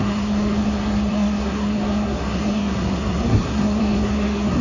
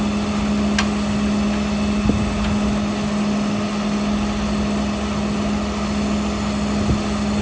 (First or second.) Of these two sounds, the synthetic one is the first